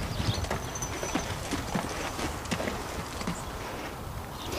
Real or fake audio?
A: real